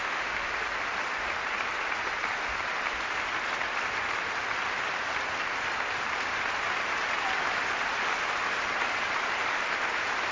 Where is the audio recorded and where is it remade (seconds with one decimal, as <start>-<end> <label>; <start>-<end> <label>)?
0.0-0.5 remade; 0.5-10.3 recorded